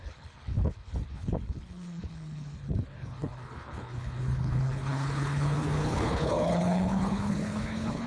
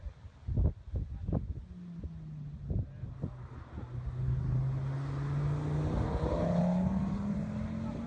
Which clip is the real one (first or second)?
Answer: second